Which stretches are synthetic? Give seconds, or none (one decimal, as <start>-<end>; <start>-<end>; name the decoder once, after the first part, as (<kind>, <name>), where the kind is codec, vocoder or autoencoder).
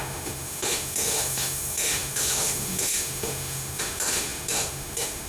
0.0-5.3 (autoencoder, DAC-VAE)